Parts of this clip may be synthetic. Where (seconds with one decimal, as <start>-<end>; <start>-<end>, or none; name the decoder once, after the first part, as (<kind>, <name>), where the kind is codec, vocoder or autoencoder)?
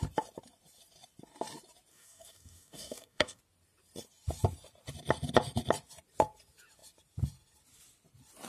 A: 1.9-3.4 (codec, DAC)